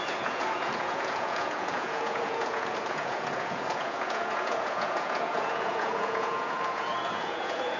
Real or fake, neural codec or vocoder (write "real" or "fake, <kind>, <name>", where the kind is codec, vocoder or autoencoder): fake, vocoder, Vocos